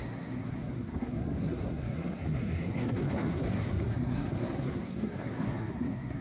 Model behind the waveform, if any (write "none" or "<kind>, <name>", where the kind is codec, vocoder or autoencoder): codec, SNAC